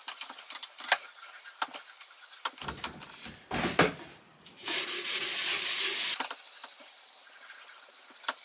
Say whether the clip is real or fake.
fake